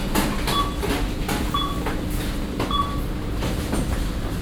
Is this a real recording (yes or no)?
yes